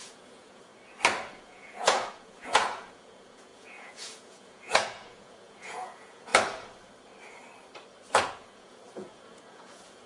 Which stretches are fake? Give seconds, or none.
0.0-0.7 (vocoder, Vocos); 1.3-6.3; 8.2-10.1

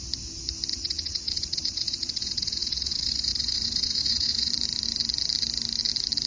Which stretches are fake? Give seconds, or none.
0.7-4.5 (vocoder, Vocos)

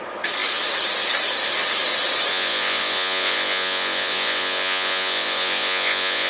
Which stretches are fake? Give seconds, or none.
2.3-6.3 (vocoder, Vocos)

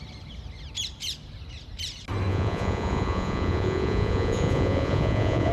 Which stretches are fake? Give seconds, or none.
2.3-5.5 (vocoder, Vocos)